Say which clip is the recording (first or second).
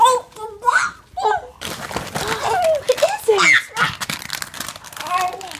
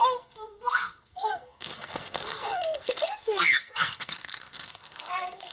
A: first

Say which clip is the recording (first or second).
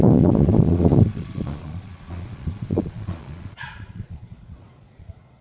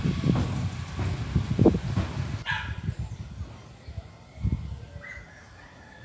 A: second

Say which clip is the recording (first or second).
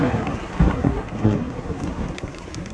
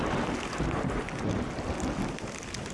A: second